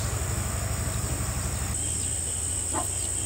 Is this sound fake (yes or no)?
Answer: no